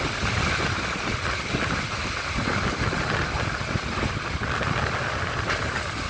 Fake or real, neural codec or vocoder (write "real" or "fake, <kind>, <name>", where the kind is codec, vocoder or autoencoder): real